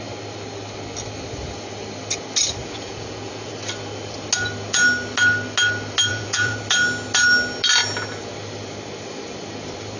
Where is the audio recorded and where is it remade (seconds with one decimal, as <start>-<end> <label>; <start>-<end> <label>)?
0.0-2.6 recorded; 2.6-3.5 remade; 3.5-6.1 recorded; 6.1-6.6 remade; 6.6-10.0 recorded